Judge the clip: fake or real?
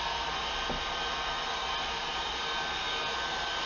real